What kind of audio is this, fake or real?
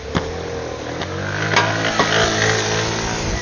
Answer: real